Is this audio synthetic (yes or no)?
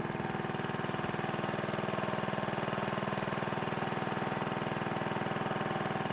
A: no